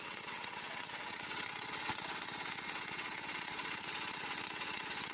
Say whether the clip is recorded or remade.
remade